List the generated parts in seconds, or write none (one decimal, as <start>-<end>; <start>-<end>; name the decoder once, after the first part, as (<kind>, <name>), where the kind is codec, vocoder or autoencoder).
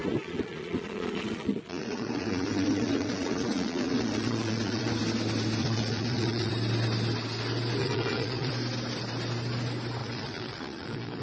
0.0-4.9 (vocoder, Vocos); 5.6-6.5; 7.8-8.5; 10.0-11.2